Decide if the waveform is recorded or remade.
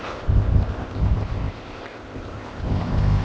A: remade